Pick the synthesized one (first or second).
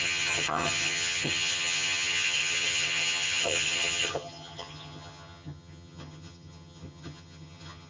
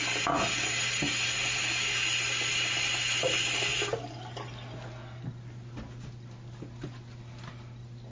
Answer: first